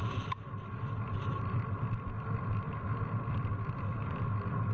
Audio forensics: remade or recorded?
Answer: recorded